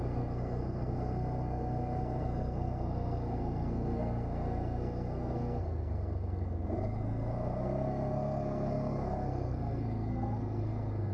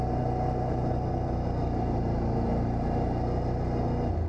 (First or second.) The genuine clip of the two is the second